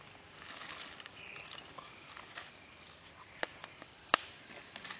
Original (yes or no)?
yes